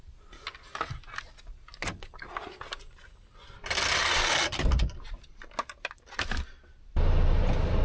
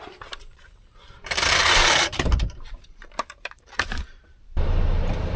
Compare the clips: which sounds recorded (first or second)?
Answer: first